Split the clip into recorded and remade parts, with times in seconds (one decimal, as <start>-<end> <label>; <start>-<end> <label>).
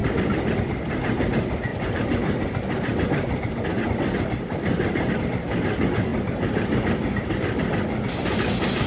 0.0-1.7 recorded; 1.7-5.5 remade; 5.5-8.9 recorded